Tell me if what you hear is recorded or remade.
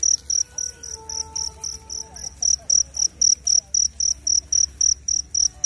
recorded